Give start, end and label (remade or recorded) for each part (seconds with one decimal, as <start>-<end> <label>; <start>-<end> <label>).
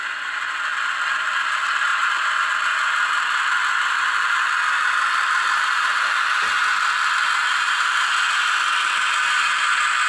0.0-10.1 recorded